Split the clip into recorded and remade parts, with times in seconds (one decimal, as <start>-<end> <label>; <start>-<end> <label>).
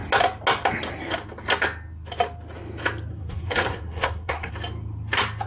0.0-3.1 recorded; 3.1-4.5 remade; 4.5-5.5 recorded